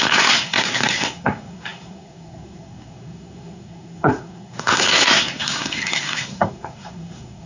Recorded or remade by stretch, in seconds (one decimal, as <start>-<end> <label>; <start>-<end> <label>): 0.0-7.5 remade